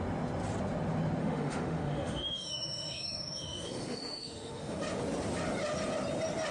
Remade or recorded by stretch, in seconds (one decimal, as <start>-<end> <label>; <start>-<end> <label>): 0.0-1.2 recorded; 1.2-4.8 remade; 4.8-6.5 recorded